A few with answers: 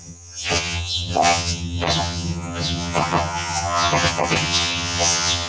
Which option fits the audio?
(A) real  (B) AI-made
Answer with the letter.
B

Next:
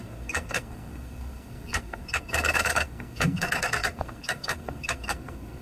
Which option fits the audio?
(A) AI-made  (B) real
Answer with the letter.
A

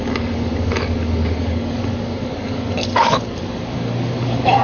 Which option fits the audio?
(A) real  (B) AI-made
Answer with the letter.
B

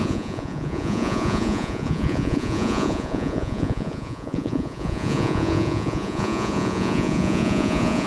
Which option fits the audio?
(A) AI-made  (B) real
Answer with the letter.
A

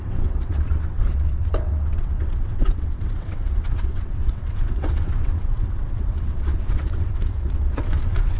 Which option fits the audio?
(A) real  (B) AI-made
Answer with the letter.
B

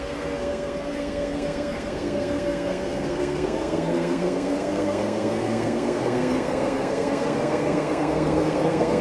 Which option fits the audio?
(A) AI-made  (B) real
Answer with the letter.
A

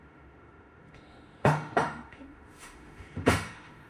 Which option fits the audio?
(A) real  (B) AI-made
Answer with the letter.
B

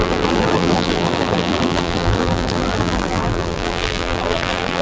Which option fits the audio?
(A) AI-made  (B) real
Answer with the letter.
A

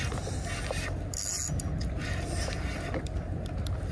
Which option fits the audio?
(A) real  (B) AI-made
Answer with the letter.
A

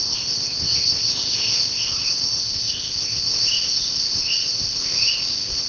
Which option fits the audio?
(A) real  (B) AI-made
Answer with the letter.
B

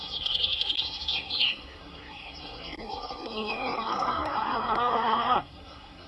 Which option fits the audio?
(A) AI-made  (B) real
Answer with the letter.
A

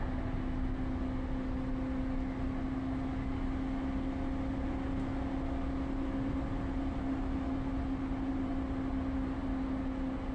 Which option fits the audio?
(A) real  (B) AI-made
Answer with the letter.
A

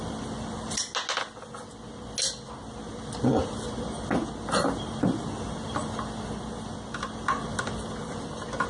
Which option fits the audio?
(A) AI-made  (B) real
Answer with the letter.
B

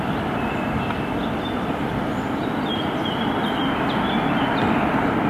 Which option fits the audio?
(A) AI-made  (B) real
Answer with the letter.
A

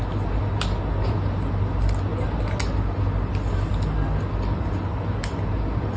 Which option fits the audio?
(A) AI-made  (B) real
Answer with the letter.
B